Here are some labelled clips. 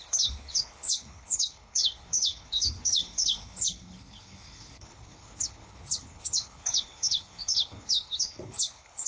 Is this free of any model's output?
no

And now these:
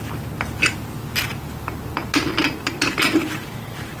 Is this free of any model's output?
yes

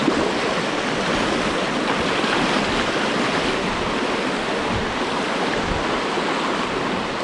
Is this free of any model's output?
yes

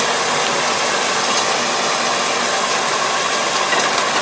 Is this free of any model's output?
yes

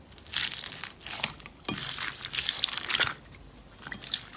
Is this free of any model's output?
yes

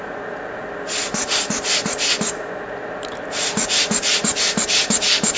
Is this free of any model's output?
yes